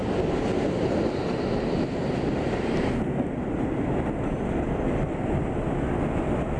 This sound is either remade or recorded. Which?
recorded